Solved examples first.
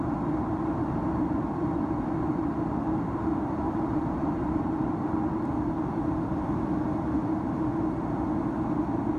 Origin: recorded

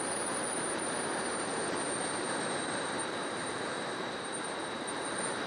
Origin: remade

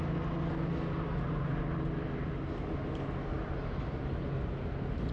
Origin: recorded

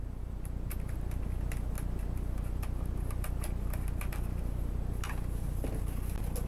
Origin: recorded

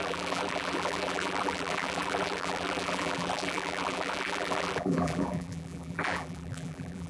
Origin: remade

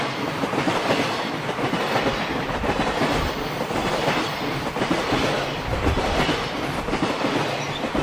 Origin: remade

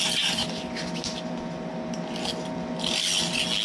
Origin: recorded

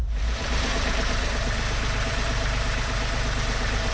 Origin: remade